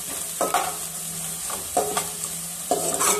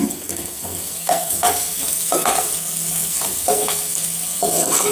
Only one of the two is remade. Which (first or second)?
second